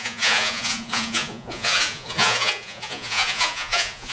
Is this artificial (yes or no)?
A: yes